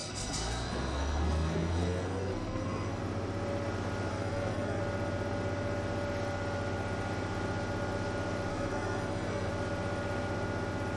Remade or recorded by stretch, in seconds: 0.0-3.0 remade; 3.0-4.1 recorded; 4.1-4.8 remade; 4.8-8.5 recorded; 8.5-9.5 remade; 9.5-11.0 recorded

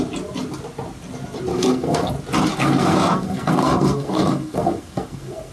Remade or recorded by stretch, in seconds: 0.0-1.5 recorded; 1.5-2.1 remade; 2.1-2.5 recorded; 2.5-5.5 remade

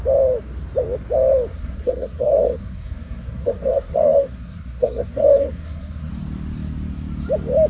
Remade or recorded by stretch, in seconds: 0.0-1.5 recorded; 1.5-6.1 remade; 6.1-7.7 recorded

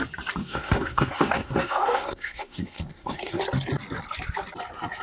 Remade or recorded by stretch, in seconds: 0.0-0.4 recorded; 0.4-3.4 remade; 3.4-5.0 recorded

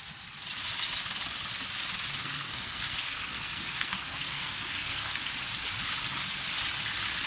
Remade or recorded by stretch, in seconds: 0.0-2.2 recorded; 2.2-5.2 remade; 5.2-7.3 recorded

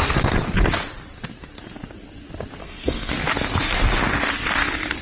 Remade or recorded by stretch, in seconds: 0.0-2.6 recorded; 2.6-3.1 remade; 3.1-5.0 recorded